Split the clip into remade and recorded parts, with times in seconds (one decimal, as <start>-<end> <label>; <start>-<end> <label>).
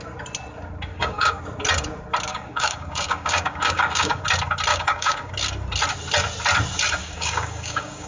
0.0-0.9 recorded; 0.9-1.4 remade; 1.4-2.3 recorded; 2.3-4.2 remade; 4.2-4.7 recorded; 4.7-5.3 remade; 5.3-7.0 recorded; 7.0-8.1 remade